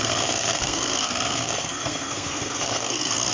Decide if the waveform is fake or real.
fake